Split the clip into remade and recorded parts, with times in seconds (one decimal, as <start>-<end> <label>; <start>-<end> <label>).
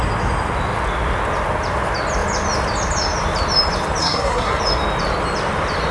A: 0.0-4.0 recorded; 4.0-4.6 remade; 4.6-5.9 recorded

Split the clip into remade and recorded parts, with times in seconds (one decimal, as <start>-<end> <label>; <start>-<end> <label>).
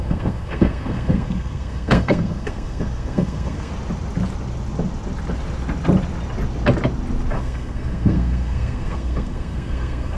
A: 0.0-3.7 remade; 3.7-7.3 recorded; 7.3-10.2 remade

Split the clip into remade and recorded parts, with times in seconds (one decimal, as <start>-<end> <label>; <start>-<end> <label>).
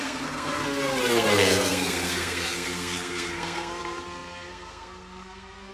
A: 0.0-5.7 remade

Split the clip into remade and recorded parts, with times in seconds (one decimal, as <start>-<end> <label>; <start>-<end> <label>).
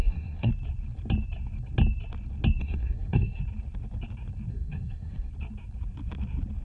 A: 0.0-0.5 remade; 0.5-2.6 recorded; 2.6-3.4 remade; 3.4-4.5 recorded; 4.5-5.3 remade; 5.3-6.6 recorded